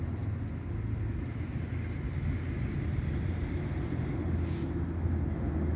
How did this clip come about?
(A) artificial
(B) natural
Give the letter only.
B